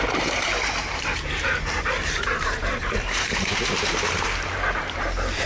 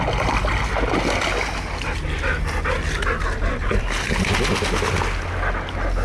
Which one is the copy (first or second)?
first